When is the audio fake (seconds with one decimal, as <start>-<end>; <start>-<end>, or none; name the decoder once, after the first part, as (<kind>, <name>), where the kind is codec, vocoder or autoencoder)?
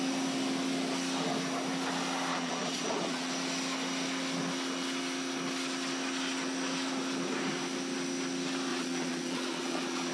2.3-3.3 (vocoder, Vocos); 8.7-10.1